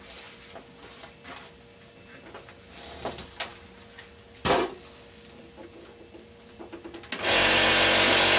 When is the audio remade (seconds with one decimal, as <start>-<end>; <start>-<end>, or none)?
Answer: none